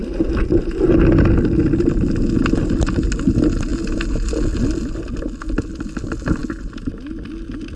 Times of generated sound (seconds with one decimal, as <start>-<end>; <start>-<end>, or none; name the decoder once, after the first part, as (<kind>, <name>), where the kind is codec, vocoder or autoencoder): none